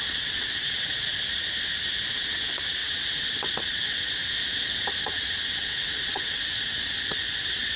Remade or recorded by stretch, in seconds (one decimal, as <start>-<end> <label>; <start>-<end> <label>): 0.0-1.0 remade; 1.0-2.1 recorded; 2.1-4.2 remade; 4.2-5.0 recorded; 5.0-7.8 remade